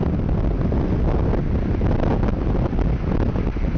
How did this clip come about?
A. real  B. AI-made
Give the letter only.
A